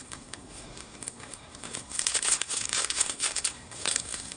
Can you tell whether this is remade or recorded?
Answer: remade